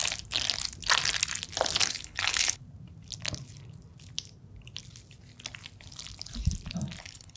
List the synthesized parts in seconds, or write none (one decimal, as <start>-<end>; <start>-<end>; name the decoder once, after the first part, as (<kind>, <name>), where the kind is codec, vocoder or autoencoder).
1.9-2.6 (codec, HILCodec); 7.0-7.4